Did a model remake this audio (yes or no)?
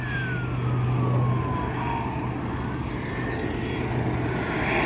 no